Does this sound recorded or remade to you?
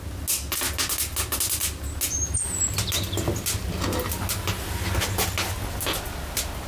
recorded